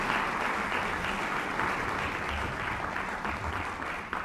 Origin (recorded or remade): recorded